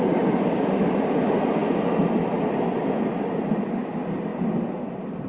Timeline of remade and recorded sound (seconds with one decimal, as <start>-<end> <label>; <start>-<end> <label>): 0.0-5.3 recorded